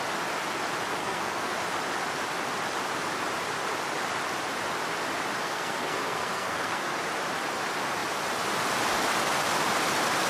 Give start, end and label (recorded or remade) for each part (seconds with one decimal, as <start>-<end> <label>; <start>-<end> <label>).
0.0-1.0 recorded; 1.0-1.5 remade; 1.5-5.4 recorded; 5.4-7.0 remade; 7.0-10.3 recorded